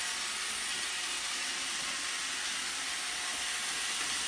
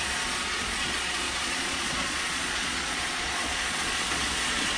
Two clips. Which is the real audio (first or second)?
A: first